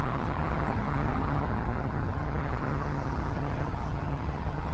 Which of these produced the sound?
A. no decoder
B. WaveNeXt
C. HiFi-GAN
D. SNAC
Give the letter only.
C